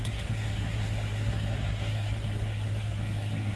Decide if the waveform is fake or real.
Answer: fake